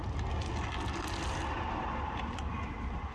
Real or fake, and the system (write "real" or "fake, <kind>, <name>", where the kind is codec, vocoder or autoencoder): real